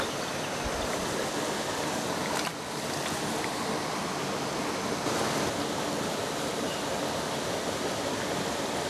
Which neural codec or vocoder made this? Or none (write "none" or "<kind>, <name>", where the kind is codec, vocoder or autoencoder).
none